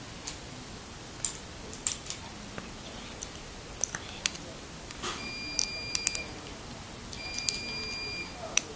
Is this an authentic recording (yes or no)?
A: yes